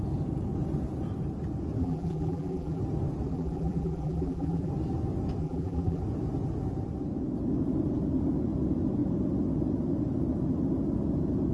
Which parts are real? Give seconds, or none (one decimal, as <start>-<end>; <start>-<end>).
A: 0.0-1.8; 2.8-3.3; 4.7-5.4; 6.0-11.5